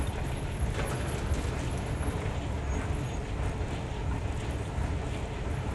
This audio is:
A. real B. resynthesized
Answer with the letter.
A